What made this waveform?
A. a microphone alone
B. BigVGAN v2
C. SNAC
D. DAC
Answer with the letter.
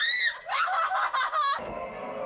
A